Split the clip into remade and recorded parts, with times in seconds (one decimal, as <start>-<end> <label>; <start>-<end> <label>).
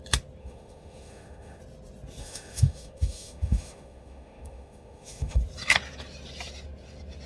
0.0-0.4 recorded; 0.4-1.6 remade; 1.6-2.2 recorded; 2.2-5.4 remade; 5.4-7.3 recorded